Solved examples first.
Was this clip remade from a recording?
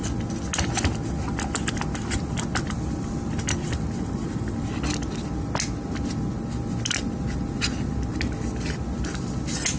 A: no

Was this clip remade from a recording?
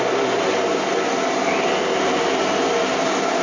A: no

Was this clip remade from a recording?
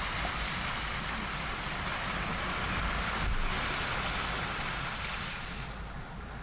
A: no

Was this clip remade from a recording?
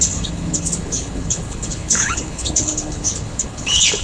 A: yes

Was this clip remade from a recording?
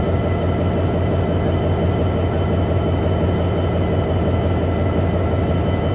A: no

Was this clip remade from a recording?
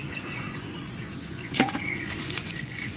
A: yes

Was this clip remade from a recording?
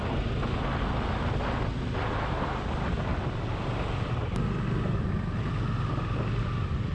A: no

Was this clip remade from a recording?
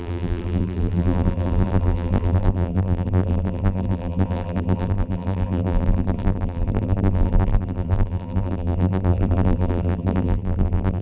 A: yes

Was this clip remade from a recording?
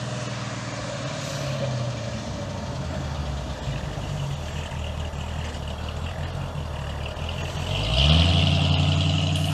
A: no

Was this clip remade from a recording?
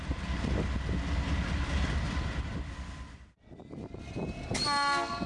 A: no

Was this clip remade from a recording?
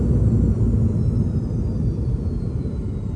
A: no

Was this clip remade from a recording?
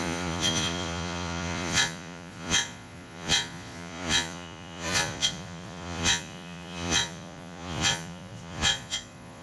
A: yes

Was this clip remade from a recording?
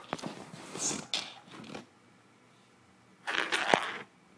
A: no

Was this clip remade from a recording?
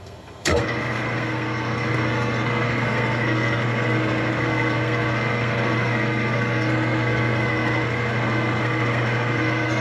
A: yes